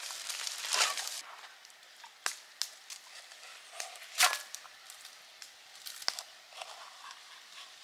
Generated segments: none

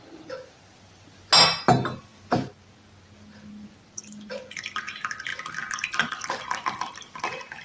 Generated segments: none

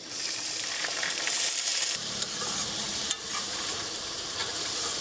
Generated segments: 0.0-4.4 (vocoder, BigVGAN v2)

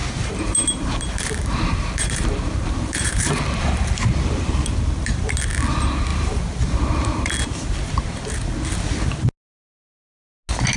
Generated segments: 0.0-5.2 (vocoder, BigVGAN v2); 6.1-7.3

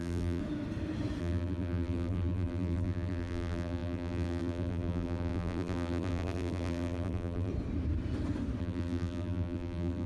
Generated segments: 0.0-0.4 (vocoder, BigVGAN v2); 1.2-7.5; 8.6-10.1

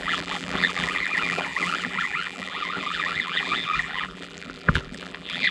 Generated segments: 0.0-5.5 (vocoder, BigVGAN v2)

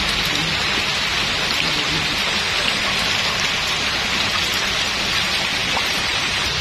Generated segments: 5.6-6.6 (vocoder, BigVGAN v2)

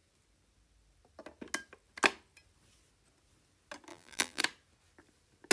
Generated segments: 3.9-4.4 (vocoder, BigVGAN v2)